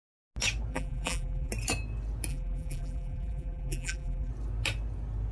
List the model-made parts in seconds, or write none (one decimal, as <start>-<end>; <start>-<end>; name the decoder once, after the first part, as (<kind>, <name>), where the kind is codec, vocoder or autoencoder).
0.7-1.5 (vocoder, BigVGAN v2); 2.3-4.3